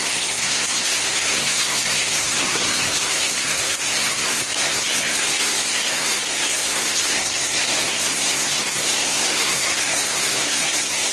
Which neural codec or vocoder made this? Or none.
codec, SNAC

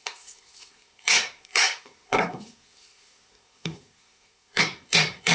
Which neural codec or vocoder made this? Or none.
codec, SNAC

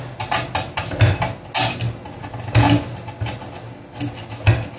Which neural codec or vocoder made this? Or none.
none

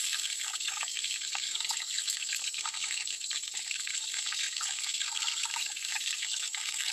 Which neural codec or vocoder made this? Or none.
codec, SNAC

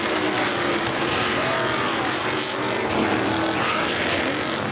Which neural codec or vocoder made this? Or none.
none